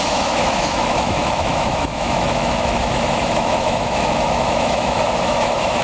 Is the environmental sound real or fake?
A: fake